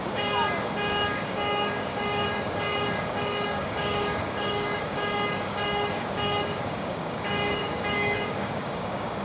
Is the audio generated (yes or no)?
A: yes